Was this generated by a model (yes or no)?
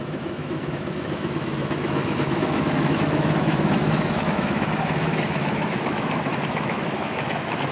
yes